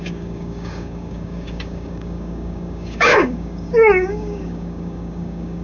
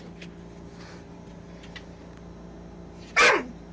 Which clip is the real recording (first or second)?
second